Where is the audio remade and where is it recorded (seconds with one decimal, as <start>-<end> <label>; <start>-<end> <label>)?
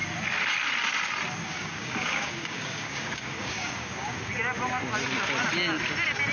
0.0-1.5 recorded; 1.5-4.3 remade; 4.3-6.3 recorded